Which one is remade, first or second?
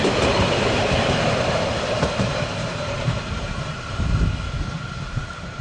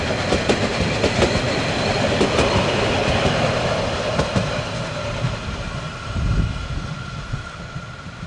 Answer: first